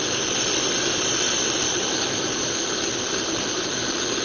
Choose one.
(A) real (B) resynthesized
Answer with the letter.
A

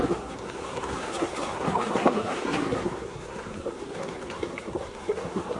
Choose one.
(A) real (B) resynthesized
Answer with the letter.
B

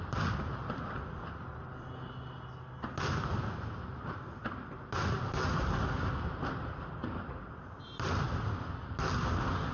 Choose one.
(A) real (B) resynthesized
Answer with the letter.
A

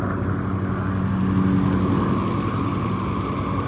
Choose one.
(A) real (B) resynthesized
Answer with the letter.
A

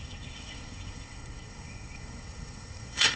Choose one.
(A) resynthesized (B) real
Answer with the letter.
A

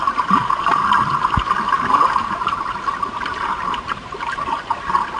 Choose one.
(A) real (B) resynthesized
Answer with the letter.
B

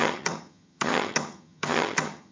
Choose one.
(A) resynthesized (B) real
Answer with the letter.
A